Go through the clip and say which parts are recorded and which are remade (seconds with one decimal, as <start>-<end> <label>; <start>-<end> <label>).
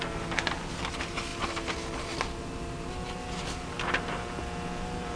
0.0-5.2 recorded